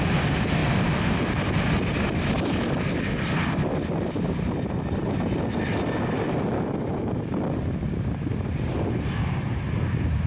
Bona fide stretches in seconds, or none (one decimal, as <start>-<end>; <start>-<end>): 0.0-10.3